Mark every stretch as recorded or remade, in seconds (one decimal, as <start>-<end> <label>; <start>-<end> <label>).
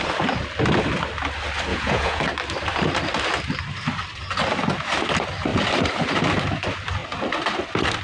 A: 0.0-1.7 recorded; 1.7-2.2 remade; 2.2-8.0 recorded